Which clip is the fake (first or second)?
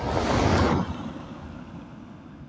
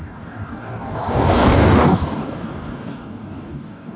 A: second